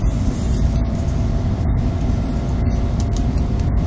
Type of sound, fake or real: real